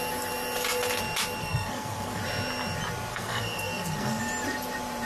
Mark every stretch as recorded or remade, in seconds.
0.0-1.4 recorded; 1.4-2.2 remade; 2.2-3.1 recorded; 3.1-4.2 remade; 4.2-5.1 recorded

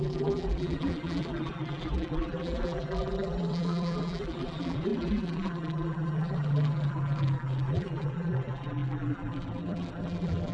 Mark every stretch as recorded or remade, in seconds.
0.0-10.5 remade

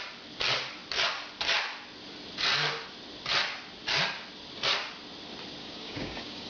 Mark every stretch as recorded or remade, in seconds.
0.0-5.6 recorded; 5.6-6.5 remade

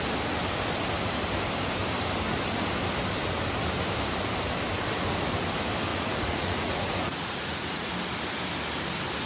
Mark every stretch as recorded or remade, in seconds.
0.0-5.9 recorded; 5.9-7.9 remade; 7.9-9.3 recorded

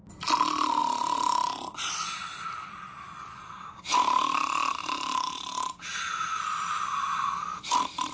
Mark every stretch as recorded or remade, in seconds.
0.0-8.1 recorded